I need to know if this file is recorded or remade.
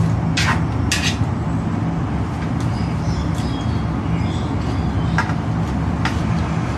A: recorded